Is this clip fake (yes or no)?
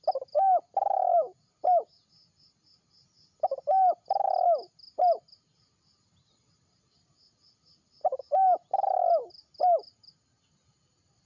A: no